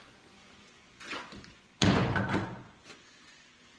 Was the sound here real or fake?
fake